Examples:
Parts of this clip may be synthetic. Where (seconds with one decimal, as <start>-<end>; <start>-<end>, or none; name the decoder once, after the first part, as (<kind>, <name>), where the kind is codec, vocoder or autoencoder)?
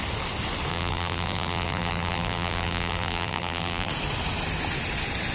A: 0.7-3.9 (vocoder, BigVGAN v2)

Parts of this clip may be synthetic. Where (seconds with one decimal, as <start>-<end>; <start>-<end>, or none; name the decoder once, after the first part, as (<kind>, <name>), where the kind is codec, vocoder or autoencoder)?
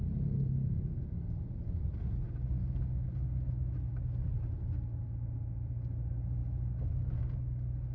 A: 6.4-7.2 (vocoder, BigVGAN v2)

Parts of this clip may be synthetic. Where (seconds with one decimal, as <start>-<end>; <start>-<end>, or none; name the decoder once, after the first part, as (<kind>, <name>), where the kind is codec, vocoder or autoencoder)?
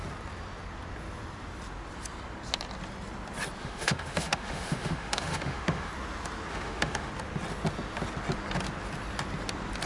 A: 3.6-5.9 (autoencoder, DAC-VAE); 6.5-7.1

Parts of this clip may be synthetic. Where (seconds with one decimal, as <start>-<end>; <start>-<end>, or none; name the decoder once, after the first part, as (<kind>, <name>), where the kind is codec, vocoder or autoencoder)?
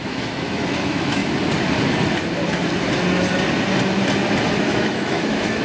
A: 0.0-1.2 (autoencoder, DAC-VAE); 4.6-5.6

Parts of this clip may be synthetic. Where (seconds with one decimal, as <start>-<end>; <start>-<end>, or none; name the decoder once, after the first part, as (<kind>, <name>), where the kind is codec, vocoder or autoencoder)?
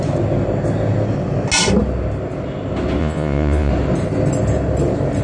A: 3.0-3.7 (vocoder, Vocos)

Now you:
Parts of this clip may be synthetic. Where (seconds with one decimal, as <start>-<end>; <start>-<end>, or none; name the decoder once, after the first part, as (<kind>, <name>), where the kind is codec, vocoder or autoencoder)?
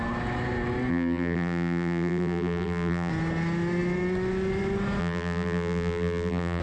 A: 0.9-3.1 (vocoder, BigVGAN v2); 5.0-6.6